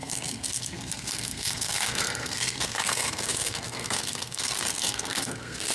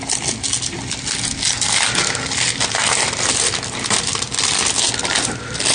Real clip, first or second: second